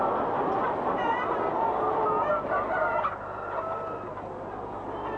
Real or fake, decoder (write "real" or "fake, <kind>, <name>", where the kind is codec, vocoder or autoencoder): real